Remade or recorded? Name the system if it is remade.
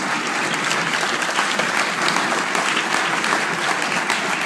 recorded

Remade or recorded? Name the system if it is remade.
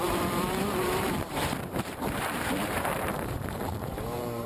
remade, vocoder, BigVGAN v2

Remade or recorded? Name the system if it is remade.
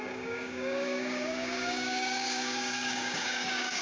remade, codec, DAC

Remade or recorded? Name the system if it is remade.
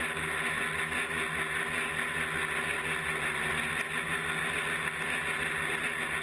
recorded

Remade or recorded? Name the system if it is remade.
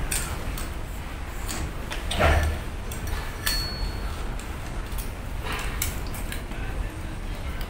recorded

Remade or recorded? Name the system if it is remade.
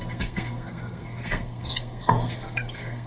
remade, codec, SNAC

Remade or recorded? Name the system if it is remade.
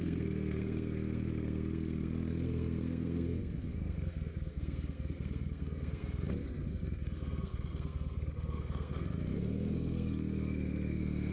remade, codec, SNAC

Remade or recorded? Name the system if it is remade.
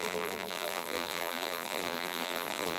remade, vocoder, BigVGAN v2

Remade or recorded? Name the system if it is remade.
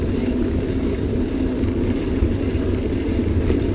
recorded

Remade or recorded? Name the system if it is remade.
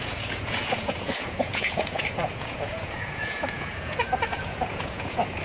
remade, vocoder, Vocos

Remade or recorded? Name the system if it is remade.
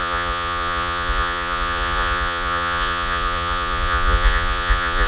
remade, vocoder, Vocos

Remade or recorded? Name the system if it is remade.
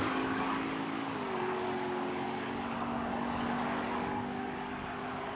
remade, codec, DAC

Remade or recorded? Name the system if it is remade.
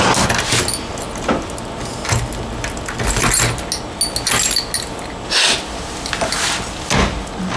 recorded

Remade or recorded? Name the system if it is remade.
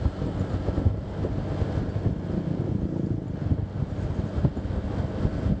recorded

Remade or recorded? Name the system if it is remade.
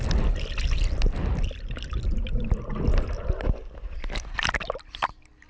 recorded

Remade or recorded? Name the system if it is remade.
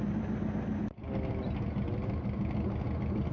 recorded